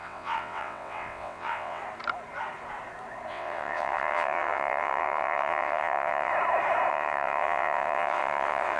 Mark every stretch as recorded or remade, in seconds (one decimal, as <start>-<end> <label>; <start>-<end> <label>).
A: 0.0-1.8 remade; 1.8-3.3 recorded; 3.3-6.3 remade; 6.3-6.9 recorded; 6.9-8.8 remade